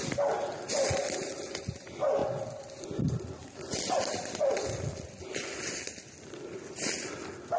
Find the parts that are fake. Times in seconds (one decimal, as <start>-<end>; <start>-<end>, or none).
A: none